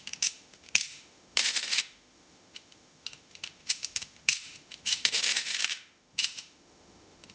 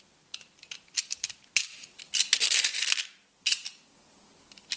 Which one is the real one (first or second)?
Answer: second